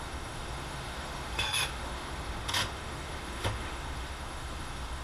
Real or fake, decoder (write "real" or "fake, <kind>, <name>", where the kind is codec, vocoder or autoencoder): fake, autoencoder, DAC-VAE